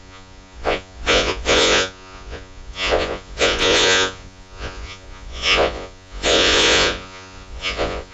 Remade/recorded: remade